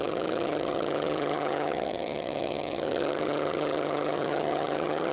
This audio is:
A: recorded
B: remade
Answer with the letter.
B